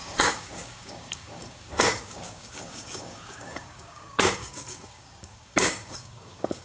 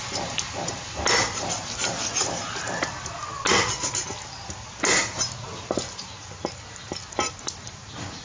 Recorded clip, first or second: second